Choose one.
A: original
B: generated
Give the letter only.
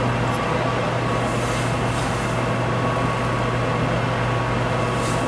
A